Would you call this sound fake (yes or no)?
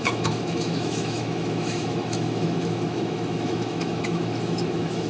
yes